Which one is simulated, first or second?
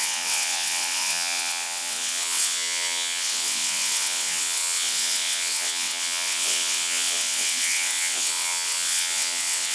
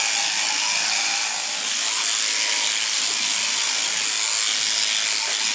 first